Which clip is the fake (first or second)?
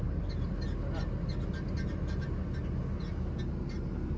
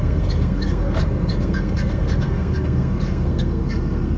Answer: second